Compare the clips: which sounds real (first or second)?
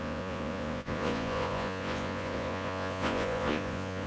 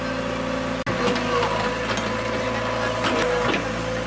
second